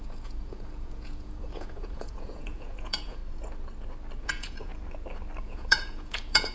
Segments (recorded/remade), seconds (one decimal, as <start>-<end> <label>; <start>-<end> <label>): 0.0-3.2 remade; 3.2-4.2 recorded; 4.2-4.7 remade; 4.7-5.4 recorded; 5.4-6.5 remade